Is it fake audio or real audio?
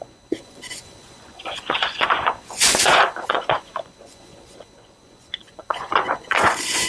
fake